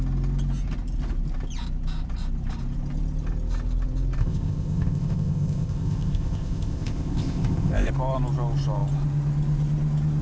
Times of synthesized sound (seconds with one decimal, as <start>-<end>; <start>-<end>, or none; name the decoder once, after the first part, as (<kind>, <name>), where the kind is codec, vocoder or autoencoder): 4.2-7.9 (codec, ZipCodec)